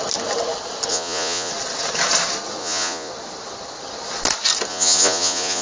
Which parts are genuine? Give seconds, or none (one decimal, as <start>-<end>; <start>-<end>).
0.0-0.9; 1.5-2.6; 3.1-4.7